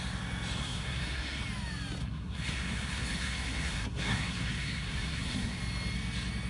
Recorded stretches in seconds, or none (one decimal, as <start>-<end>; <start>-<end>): 0.0-0.6; 1.4-2.0; 5.6-6.5